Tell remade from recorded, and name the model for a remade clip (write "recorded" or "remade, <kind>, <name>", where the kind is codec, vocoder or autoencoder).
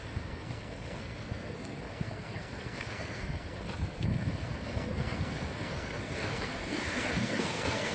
remade, codec, SNAC